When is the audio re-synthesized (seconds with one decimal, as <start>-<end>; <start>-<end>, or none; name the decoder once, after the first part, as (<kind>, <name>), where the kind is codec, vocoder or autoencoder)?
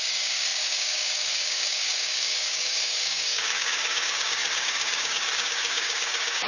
0.0-6.5 (codec, DAC)